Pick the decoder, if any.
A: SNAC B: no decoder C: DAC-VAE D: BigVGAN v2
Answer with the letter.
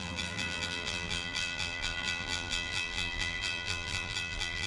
D